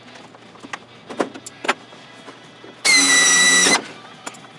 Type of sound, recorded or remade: recorded